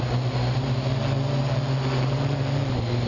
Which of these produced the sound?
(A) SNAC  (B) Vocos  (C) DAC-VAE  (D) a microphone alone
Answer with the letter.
D